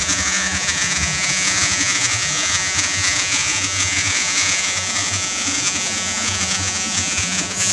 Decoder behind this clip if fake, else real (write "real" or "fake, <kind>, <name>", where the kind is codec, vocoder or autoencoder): fake, vocoder, Vocos